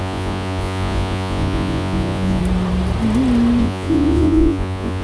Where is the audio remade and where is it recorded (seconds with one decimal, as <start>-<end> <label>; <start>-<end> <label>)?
0.0-2.4 remade; 2.4-3.6 recorded; 3.6-5.0 remade